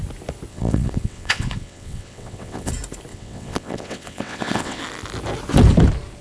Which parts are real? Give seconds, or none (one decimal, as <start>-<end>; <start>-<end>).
0.0-0.5; 2.7-3.1; 4.8-6.2